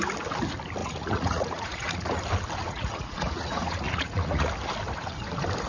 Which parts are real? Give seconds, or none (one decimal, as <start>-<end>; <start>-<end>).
0.0-0.8; 2.2-2.6; 4.5-5.7

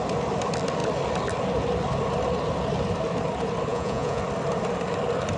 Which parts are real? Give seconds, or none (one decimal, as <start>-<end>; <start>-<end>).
0.0-3.7; 4.2-5.4

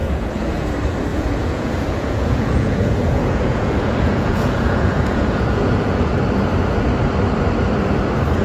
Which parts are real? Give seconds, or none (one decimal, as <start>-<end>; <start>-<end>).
0.7-1.1; 6.1-8.4

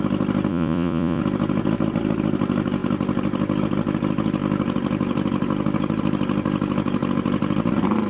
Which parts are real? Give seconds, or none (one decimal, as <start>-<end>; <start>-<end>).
0.0-0.5; 1.2-8.1

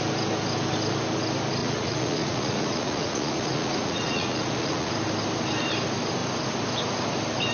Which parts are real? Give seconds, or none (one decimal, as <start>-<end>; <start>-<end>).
0.0-1.6; 4.9-7.5

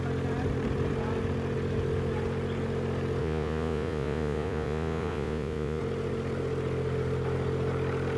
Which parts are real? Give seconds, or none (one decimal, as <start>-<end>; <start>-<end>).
0.0-3.2; 5.8-8.2

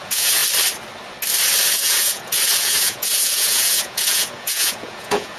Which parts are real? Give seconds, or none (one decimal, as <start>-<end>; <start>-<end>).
0.4-1.7

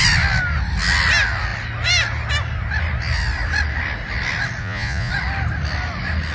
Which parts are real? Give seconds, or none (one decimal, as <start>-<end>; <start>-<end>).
0.0-4.6; 5.1-6.3